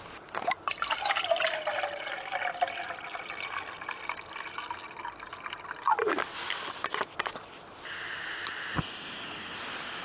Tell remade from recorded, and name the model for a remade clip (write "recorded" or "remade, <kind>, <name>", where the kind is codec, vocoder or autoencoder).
recorded